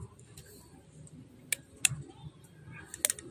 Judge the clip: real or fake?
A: real